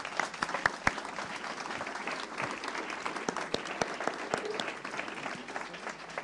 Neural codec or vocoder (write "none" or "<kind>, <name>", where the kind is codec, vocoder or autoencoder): none